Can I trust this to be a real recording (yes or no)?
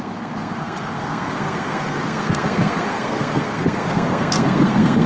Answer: no